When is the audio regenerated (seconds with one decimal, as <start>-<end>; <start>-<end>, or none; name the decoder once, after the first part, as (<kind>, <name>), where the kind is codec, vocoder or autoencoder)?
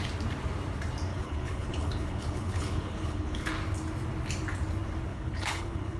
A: 1.1-3.5 (codec, HILCodec); 5.1-6.0